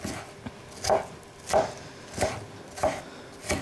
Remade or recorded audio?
recorded